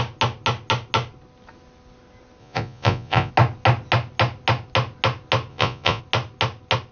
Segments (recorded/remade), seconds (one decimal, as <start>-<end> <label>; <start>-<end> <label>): 0.0-2.4 recorded; 2.4-3.3 remade; 3.3-5.5 recorded; 5.5-6.0 remade; 6.0-6.9 recorded